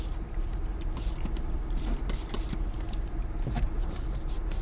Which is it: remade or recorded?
remade